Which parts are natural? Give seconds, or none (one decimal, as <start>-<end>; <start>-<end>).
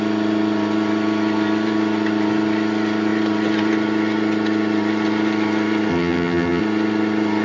0.0-5.9; 6.6-7.4